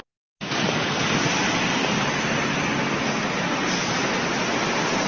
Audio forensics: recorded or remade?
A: recorded